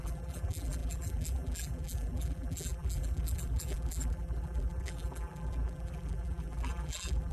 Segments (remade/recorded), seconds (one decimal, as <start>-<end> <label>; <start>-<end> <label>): 0.0-7.3 remade